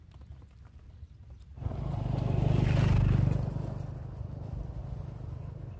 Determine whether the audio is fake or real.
real